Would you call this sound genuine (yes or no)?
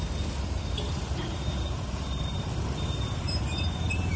yes